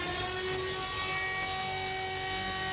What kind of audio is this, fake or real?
real